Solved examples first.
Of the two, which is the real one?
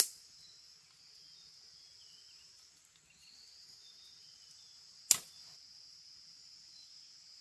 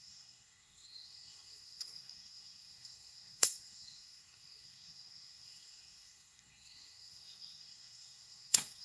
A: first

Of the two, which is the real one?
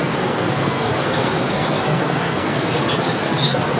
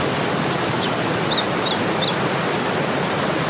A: second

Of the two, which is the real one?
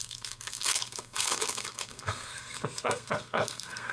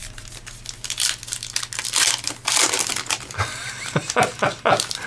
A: second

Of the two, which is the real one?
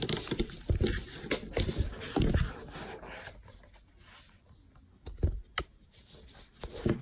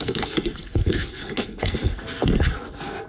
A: first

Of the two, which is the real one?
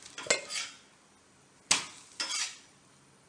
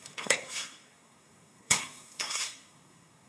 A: first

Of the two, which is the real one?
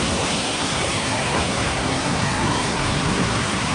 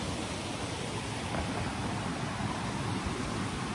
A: second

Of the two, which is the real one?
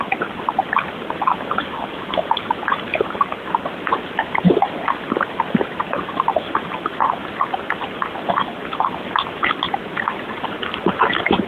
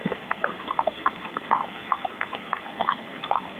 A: first